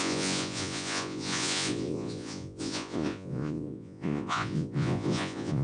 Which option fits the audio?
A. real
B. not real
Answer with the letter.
B